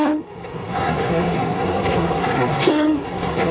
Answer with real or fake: fake